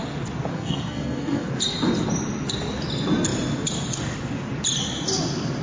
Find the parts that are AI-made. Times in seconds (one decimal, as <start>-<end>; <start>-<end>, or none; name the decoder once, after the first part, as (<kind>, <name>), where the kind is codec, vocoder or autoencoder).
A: 0.5-1.5 (codec, SNAC)